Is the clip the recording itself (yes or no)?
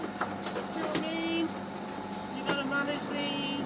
yes